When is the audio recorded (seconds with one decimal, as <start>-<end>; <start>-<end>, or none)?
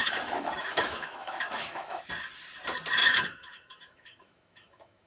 2.0-3.0